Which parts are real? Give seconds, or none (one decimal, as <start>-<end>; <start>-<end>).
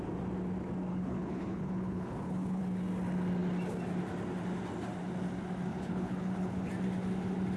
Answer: 0.0-0.9; 2.6-5.7; 6.7-7.6